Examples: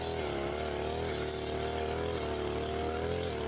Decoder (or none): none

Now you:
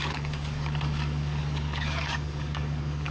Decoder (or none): codec, DAC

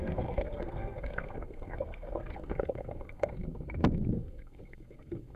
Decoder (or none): codec, SNAC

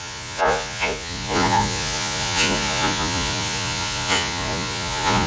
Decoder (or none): vocoder, Vocos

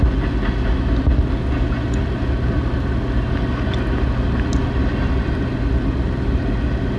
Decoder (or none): none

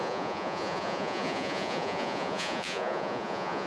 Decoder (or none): vocoder, Vocos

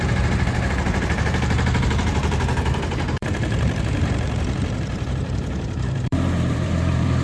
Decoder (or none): vocoder, BigVGAN v2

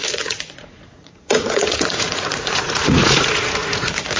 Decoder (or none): vocoder, Vocos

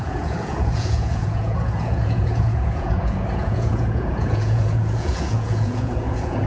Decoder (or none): vocoder, Vocos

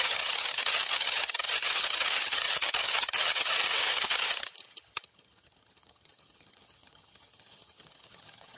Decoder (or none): vocoder, HiFi-GAN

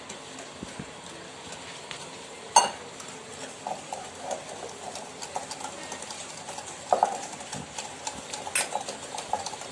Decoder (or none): none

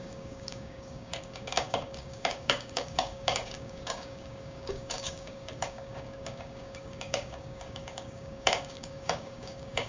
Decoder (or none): codec, DAC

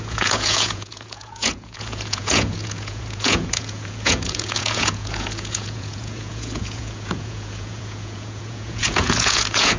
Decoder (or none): vocoder, Vocos